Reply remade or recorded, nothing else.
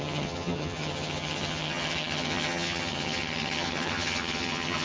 remade